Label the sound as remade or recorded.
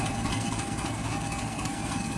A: remade